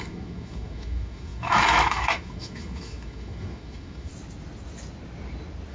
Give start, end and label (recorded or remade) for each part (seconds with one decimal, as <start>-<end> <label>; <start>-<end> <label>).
0.0-4.1 remade; 4.1-5.7 recorded